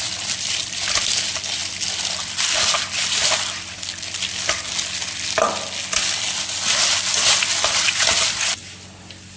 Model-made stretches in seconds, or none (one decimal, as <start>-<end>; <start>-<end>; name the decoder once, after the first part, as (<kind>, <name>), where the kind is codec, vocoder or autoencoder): none